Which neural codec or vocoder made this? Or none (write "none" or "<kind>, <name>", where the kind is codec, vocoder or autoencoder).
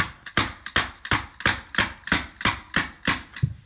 none